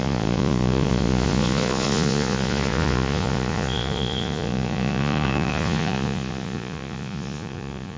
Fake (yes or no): yes